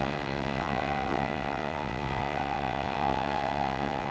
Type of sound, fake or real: fake